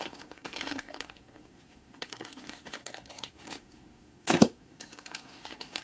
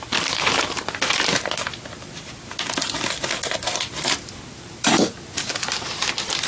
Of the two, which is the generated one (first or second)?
first